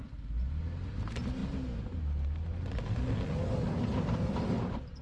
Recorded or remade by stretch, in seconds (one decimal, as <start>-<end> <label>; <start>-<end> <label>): 0.0-5.0 recorded